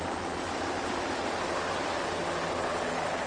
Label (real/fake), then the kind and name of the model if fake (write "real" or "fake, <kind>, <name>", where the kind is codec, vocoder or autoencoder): real